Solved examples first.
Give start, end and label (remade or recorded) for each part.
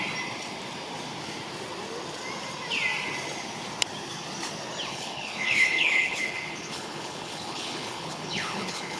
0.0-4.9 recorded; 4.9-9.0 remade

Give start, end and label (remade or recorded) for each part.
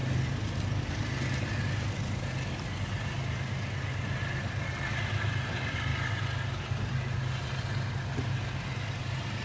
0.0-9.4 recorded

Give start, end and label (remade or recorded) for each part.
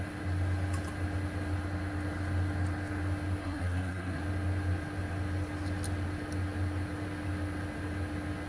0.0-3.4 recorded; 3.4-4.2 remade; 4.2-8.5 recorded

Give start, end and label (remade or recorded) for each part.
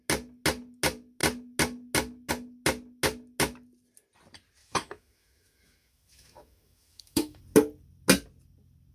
0.0-4.6 recorded; 4.6-7.4 remade; 7.4-8.9 recorded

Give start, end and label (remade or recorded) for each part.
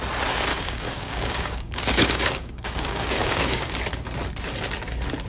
0.0-0.5 recorded; 0.5-3.7 remade; 3.7-5.3 recorded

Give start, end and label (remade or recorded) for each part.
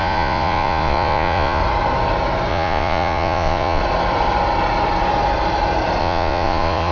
0.0-1.6 remade; 1.6-2.5 recorded; 2.5-3.8 remade; 3.8-6.0 recorded; 6.0-6.9 remade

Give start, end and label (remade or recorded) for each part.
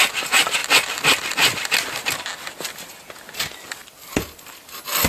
0.0-0.6 recorded; 0.6-3.2 remade; 3.2-5.1 recorded